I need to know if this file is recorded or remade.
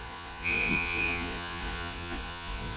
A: remade